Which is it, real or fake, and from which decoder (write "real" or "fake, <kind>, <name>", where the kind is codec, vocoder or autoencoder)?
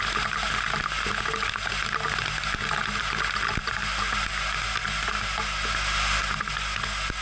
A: real